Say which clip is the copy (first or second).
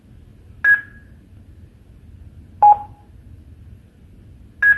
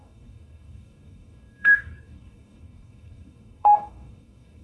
second